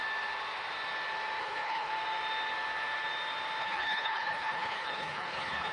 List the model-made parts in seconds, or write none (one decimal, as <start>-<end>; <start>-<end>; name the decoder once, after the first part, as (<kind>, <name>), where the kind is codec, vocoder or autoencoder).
1.4-1.9 (codec, HILCodec); 3.6-5.7